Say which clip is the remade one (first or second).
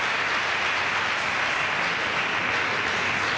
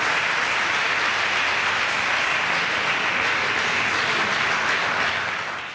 second